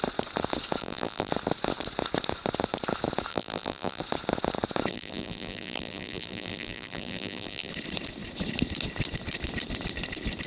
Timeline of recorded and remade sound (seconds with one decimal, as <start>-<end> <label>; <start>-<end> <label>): 0.0-0.8 recorded; 0.8-1.3 remade; 1.3-3.3 recorded; 3.3-4.0 remade; 4.0-4.9 recorded; 4.9-7.7 remade; 7.7-10.5 recorded